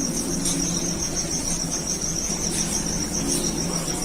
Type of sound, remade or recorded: recorded